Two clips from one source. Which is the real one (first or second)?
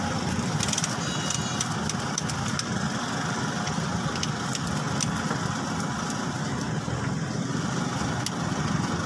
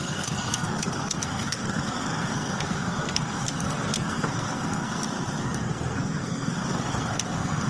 first